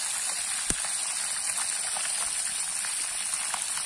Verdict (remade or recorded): recorded